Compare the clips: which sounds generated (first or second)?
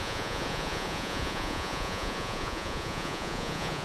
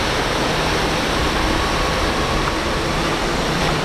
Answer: first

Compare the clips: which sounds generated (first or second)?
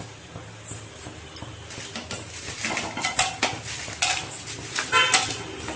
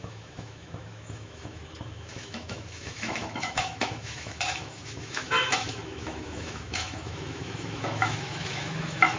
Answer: second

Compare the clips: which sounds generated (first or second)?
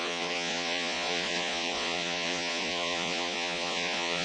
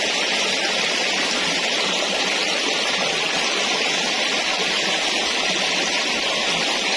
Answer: first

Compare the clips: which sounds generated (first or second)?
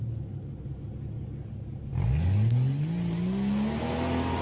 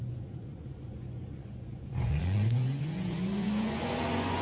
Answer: second